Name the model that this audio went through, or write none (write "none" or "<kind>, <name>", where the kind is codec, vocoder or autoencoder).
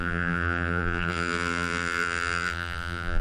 vocoder, BigVGAN v2